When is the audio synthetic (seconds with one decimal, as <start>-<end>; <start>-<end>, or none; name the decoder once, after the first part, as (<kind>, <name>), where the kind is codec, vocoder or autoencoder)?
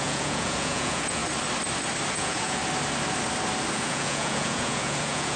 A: 0.0-1.2 (vocoder, Vocos); 2.1-2.6; 3.7-5.4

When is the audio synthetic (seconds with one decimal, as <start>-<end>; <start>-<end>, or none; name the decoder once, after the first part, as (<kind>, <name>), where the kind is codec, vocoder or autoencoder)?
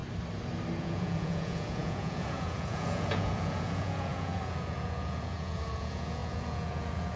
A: 0.8-7.2 (vocoder, Vocos)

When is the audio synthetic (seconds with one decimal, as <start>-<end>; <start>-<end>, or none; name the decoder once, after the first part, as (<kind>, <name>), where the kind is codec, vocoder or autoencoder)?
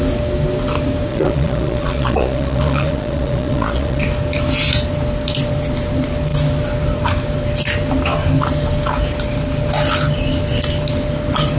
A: 1.1-4.0 (vocoder, Vocos)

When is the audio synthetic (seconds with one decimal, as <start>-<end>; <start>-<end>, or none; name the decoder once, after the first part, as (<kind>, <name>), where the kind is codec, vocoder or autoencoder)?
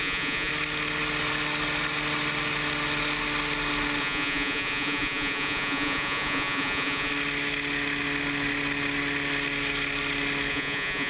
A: 0.0-0.5 (vocoder, Vocos); 4.0-7.1; 10.5-11.1